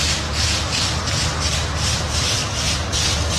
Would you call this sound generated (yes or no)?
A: no